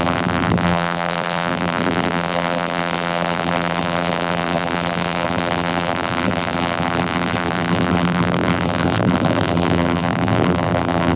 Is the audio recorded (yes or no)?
no